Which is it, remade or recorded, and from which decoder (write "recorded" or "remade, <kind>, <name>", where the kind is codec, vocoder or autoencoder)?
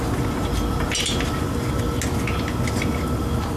recorded